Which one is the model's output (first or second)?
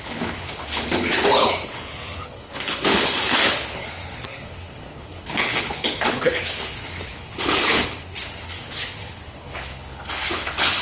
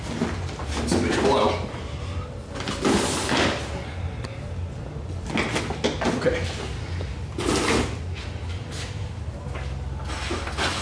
first